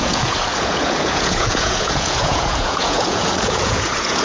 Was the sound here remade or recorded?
remade